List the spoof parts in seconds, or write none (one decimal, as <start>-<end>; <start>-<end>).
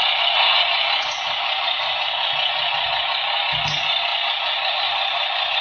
none